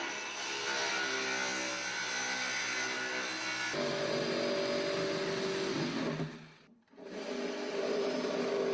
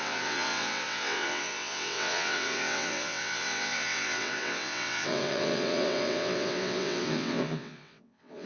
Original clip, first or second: first